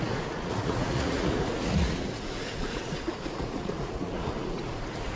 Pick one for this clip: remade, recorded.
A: remade